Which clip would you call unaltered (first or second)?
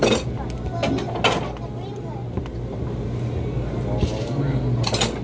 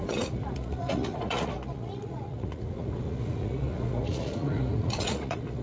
first